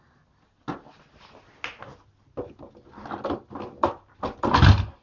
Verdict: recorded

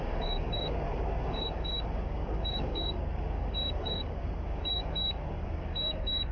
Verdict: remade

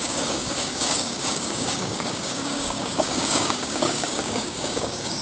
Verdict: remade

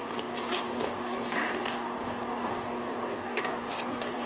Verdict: remade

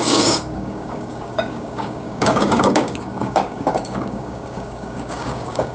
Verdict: remade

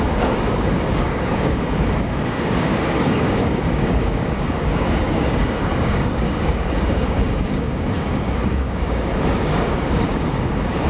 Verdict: remade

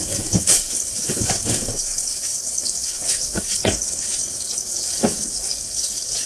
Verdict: remade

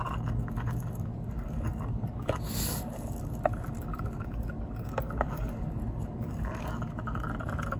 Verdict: remade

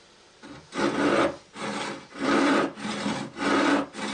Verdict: recorded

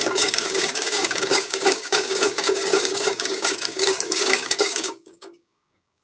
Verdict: remade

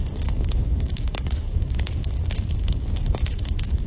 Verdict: remade